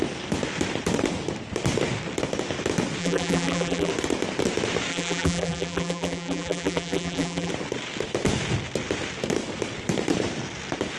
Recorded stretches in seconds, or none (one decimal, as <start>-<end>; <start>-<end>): 0.0-3.0; 3.9-4.9; 7.5-11.0